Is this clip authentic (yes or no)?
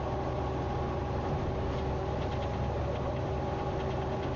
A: yes